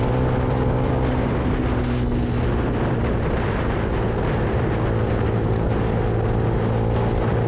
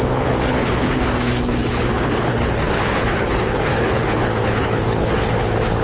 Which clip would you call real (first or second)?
first